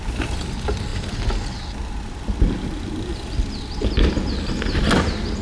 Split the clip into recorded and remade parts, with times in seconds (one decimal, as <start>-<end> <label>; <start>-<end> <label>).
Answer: 0.0-5.4 recorded

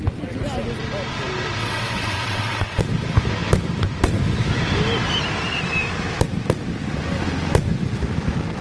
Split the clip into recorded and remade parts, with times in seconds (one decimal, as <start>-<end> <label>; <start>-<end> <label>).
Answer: 0.0-1.6 recorded; 1.6-2.8 remade; 2.8-8.6 recorded